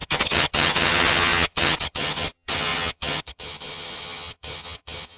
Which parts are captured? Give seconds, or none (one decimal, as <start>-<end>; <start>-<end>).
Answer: none